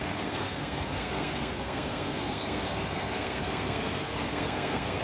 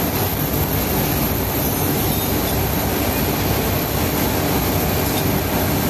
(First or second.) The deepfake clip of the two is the first